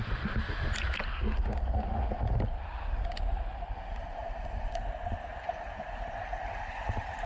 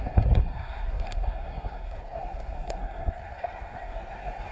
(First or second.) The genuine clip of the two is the first